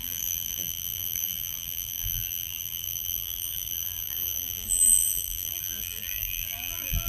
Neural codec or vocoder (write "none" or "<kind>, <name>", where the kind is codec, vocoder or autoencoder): vocoder, BigVGAN v2